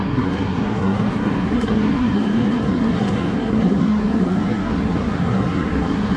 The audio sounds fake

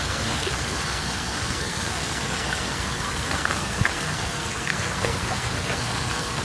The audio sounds fake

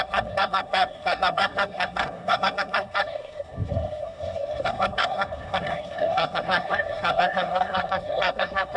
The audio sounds fake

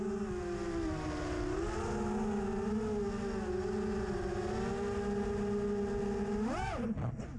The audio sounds real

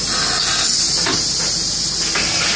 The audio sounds real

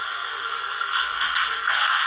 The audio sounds fake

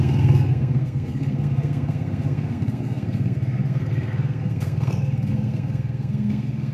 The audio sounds fake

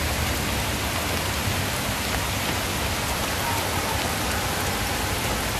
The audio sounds real